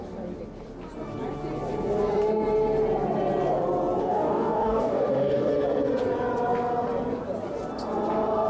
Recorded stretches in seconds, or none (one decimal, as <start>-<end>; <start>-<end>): 0.0-4.0; 5.5-8.5